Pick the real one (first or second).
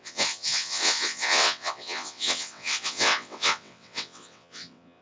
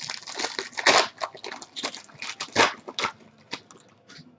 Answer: second